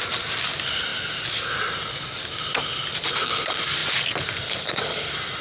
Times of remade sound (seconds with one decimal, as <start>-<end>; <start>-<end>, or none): none